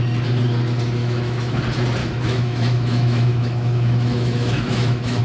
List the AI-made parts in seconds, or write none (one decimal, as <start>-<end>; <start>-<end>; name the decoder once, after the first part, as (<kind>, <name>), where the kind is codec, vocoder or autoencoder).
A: 1.0-1.6 (autoencoder, DAC-VAE); 2.0-5.2